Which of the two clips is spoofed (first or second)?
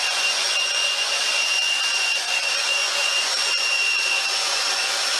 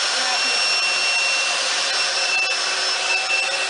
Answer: first